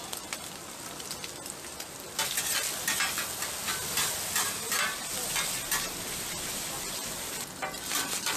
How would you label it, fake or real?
real